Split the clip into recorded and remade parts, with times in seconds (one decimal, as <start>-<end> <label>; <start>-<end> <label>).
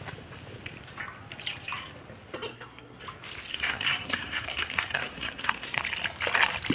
0.0-2.5 recorded; 2.5-3.0 remade; 3.0-3.5 recorded; 3.5-5.8 remade; 5.8-6.7 recorded